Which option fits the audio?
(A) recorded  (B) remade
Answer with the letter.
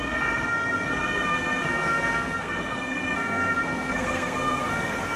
B